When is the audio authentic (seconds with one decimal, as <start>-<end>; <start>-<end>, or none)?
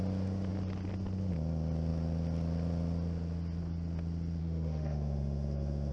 0.0-4.4